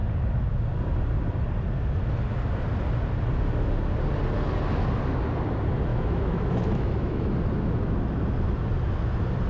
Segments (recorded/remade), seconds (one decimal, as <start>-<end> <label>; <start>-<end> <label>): 0.0-5.9 recorded; 5.9-7.3 remade; 7.3-9.5 recorded